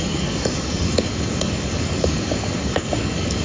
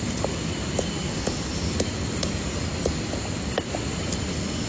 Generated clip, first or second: first